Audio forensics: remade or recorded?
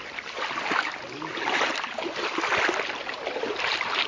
recorded